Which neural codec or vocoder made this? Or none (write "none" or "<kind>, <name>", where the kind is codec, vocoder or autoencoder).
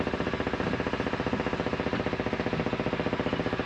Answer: none